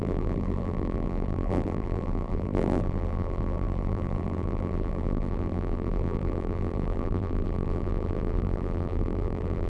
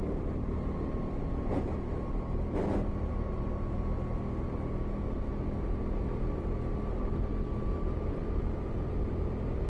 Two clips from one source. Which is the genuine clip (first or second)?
second